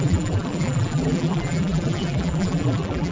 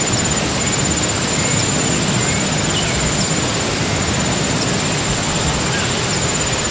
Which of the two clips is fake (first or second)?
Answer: first